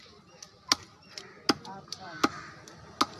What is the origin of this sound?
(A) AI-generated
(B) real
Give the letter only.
B